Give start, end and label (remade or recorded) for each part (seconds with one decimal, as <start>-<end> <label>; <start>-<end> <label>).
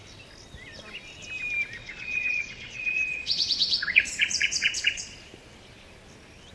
0.0-1.8 recorded; 1.8-5.0 remade; 5.0-6.5 recorded